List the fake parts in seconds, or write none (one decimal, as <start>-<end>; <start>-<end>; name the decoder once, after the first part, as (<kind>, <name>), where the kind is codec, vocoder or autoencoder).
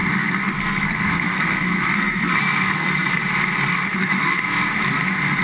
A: 0.0-3.2 (codec, SNAC); 3.7-4.4